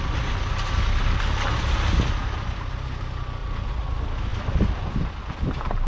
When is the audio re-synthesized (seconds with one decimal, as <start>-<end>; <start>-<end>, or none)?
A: 3.4-3.9